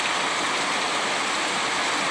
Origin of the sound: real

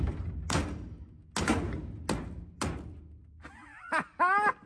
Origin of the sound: real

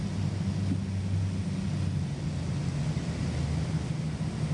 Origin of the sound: real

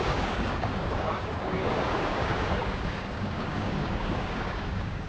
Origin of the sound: fake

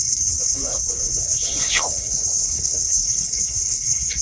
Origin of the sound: fake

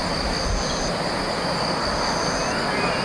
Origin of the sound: real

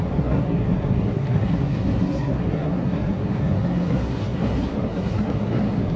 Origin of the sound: fake